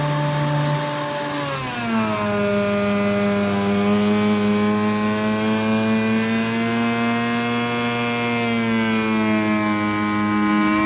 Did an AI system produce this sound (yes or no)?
no